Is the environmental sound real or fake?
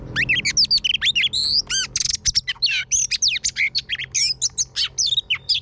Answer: real